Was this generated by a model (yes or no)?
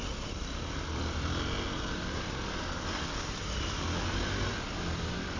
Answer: no